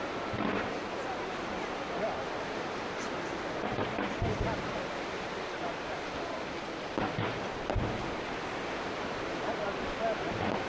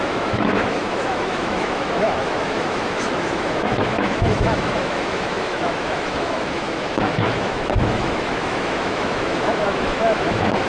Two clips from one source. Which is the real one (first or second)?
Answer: first